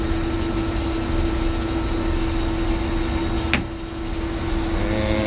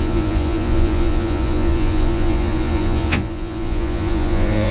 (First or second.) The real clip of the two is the first